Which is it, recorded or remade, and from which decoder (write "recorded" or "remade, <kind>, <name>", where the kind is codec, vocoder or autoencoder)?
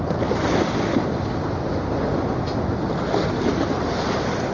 recorded